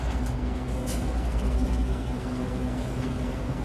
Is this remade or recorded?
remade